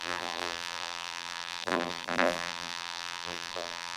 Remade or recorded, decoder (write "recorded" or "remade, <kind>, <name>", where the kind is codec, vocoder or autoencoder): remade, vocoder, BigVGAN v2